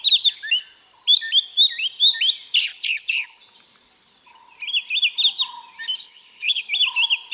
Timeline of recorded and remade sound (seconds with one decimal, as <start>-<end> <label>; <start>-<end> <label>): 0.0-2.7 recorded; 2.7-3.4 remade; 3.4-6.0 recorded; 6.0-6.7 remade; 6.7-7.3 recorded

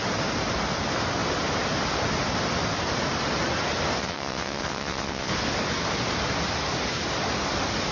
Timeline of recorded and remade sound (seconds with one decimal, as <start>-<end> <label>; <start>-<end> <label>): 0.0-4.0 recorded; 4.0-5.3 remade; 5.3-7.9 recorded

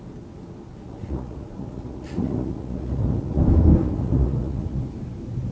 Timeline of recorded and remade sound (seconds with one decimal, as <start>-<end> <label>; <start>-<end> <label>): 0.0-0.7 recorded; 0.7-3.4 remade; 3.4-3.8 recorded; 3.8-4.8 remade; 4.8-5.5 recorded

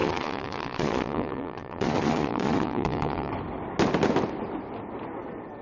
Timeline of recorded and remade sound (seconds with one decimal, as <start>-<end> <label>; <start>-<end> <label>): 0.0-3.3 remade; 3.3-5.6 recorded

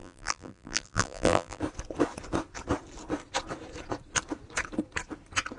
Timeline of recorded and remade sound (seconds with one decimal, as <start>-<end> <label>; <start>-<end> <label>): 0.0-1.6 remade; 1.6-5.6 recorded

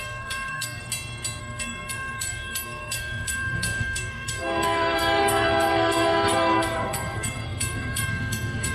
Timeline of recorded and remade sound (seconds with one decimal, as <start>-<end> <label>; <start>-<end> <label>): 0.0-0.8 remade; 0.8-1.4 recorded; 1.4-8.7 remade

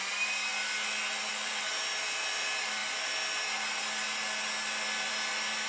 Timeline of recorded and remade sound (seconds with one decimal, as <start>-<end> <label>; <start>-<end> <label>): 0.0-5.7 recorded

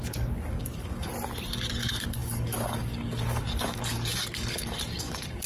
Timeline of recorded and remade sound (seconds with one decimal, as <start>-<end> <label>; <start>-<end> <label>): 0.0-1.1 remade; 1.1-1.7 recorded; 1.7-5.5 remade